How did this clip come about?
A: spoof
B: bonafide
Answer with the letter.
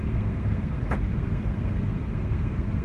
A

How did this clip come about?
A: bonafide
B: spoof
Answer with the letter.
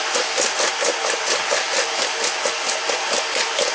A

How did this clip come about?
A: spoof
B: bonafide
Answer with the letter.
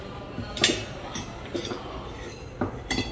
B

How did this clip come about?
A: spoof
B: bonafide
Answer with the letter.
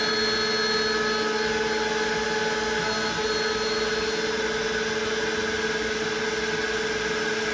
B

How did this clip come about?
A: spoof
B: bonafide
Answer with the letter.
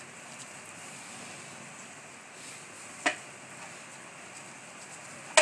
B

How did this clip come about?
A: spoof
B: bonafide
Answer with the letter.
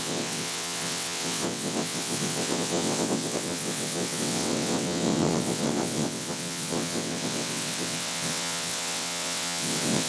A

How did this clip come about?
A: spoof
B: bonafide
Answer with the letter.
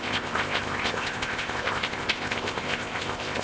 A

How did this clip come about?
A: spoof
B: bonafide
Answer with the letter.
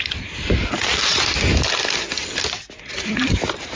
B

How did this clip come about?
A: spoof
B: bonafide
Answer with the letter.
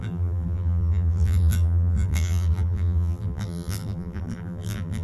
A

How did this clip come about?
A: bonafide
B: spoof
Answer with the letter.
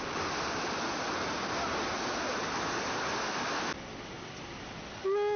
A